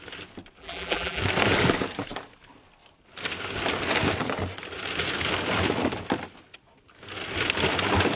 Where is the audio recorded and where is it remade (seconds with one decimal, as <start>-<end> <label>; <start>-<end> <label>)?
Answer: 0.0-0.6 recorded; 0.6-1.2 remade; 1.2-8.2 recorded